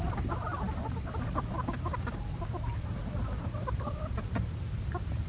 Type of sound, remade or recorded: remade